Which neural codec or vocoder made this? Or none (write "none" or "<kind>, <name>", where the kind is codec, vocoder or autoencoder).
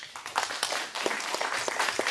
none